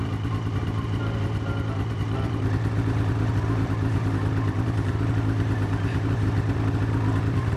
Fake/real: fake